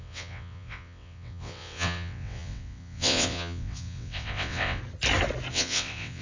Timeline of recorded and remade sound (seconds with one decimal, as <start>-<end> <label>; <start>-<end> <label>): 0.0-4.8 remade; 4.8-5.5 recorded; 5.5-6.2 remade